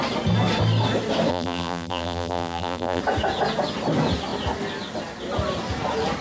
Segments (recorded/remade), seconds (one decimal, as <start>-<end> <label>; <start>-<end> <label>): 0.0-1.3 recorded; 1.3-3.0 remade; 3.0-6.2 recorded